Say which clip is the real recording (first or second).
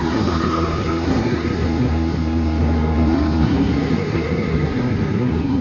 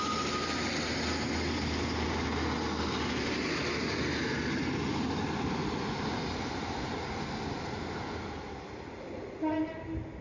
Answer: second